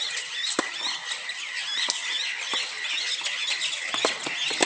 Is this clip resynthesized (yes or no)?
no